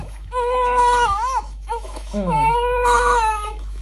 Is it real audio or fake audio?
fake